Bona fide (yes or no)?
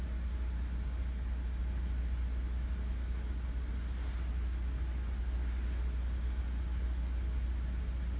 yes